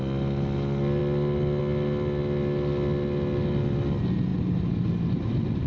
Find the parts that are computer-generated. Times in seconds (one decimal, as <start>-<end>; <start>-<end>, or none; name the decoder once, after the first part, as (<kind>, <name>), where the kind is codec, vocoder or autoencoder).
none